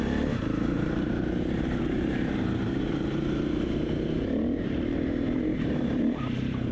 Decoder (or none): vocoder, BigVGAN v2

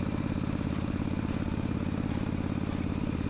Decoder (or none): none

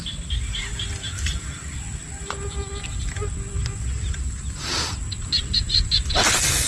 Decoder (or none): none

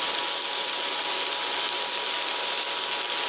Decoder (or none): none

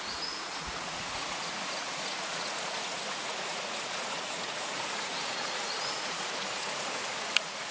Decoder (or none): vocoder, Vocos